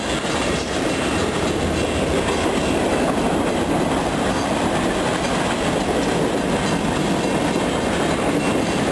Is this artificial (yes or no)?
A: no